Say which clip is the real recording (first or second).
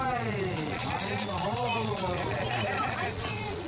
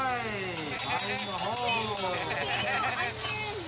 second